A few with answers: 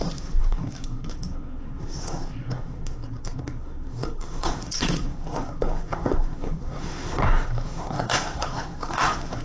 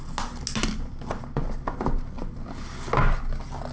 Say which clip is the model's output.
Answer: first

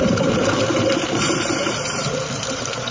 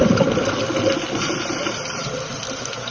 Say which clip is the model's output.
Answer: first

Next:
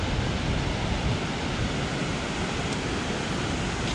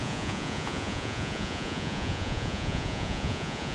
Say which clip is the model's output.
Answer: second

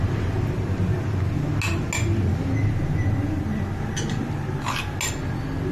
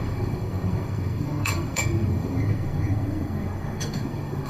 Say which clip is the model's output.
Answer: second